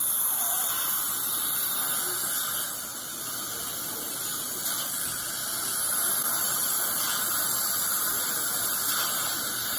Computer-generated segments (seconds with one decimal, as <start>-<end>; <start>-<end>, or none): none